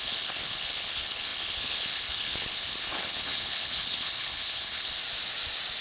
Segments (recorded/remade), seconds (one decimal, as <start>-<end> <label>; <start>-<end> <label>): 0.0-5.0 remade; 5.0-5.8 recorded